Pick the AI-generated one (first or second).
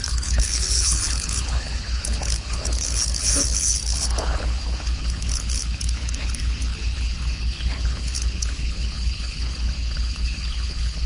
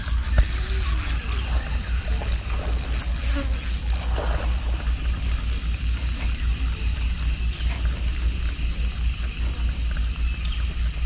first